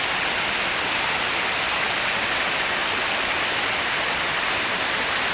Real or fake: real